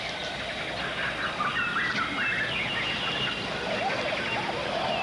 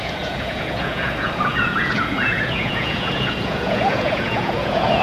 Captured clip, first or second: first